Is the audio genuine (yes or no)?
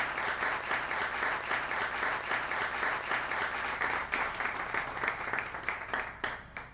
yes